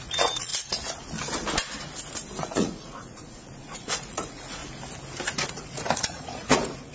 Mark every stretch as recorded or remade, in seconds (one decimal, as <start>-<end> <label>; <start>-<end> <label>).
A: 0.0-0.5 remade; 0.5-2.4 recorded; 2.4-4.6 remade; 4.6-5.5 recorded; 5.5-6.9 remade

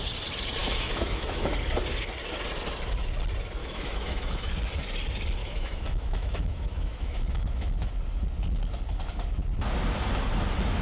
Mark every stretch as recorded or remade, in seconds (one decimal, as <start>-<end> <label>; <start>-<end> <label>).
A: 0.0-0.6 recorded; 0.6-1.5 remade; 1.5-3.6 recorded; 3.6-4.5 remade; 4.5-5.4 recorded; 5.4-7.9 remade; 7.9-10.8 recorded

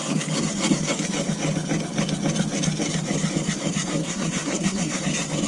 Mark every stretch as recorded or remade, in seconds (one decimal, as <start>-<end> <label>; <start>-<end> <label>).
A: 0.0-4.0 recorded; 4.0-5.0 remade; 5.0-5.5 recorded

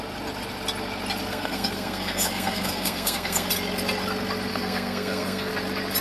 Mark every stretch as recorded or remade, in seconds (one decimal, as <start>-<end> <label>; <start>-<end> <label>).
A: 0.0-1.3 recorded; 1.3-3.5 remade; 3.5-4.5 recorded; 4.5-5.5 remade; 5.5-6.0 recorded

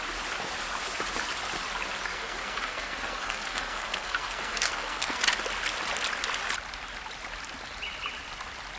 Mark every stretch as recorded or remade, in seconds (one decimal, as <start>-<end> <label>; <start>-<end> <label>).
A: 0.0-2.1 recorded; 2.1-5.2 remade; 5.2-8.8 recorded